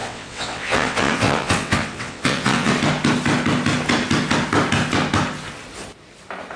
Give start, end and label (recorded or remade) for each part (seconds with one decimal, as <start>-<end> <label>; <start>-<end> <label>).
0.0-2.7 remade; 2.7-6.6 recorded